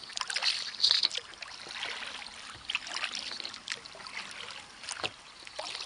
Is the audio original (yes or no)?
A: yes